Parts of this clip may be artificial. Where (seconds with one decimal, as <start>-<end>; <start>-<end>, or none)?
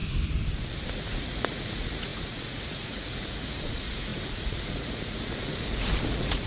0.9-6.5